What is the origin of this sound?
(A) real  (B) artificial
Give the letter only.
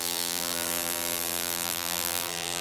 B